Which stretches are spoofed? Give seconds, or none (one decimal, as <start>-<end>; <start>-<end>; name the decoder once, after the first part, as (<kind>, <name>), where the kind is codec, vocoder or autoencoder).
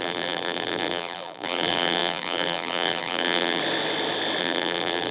0.0-3.6 (vocoder, BigVGAN v2); 4.4-5.1